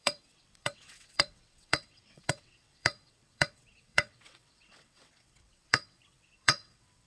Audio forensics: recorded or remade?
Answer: remade